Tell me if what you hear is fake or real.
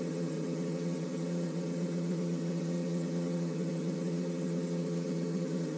fake